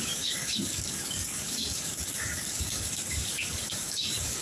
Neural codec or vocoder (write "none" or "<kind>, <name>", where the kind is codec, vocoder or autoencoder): codec, DAC